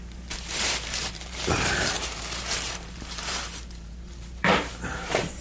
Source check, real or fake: fake